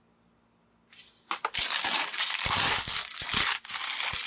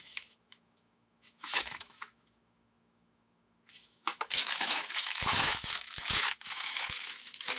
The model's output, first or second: second